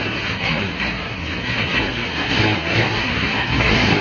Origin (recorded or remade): remade